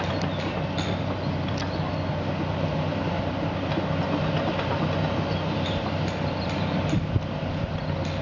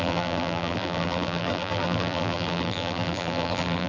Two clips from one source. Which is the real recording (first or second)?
first